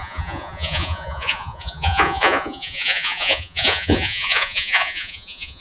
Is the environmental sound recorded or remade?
remade